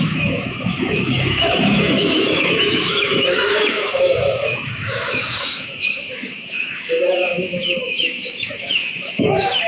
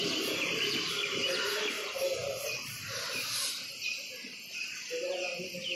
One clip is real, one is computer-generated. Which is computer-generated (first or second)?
first